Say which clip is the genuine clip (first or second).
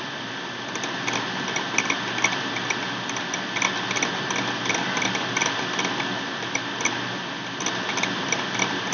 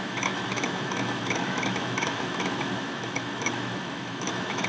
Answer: first